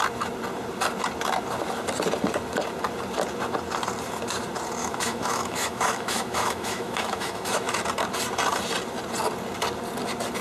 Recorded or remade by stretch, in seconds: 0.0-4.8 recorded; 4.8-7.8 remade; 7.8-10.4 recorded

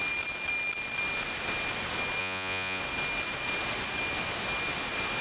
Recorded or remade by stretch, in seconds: 0.0-2.2 recorded; 2.2-2.8 remade; 2.8-5.2 recorded

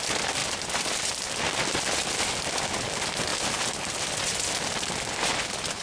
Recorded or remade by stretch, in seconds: 0.0-5.8 recorded

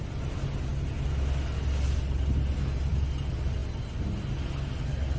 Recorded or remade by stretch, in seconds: 0.0-5.2 recorded

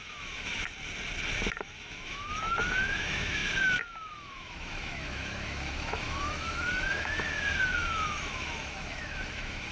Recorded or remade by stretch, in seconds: 0.0-0.5 remade; 0.5-1.8 recorded; 1.8-9.7 remade

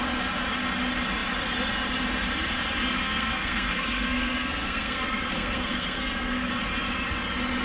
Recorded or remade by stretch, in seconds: 0.0-3.0 recorded; 3.0-6.5 remade; 6.5-7.6 recorded

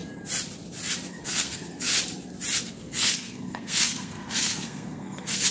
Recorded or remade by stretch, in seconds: 0.0-1.1 recorded; 1.1-1.9 remade; 1.9-2.6 recorded; 2.6-5.5 remade

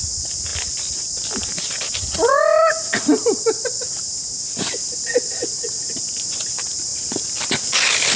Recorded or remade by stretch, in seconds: 0.0-8.2 recorded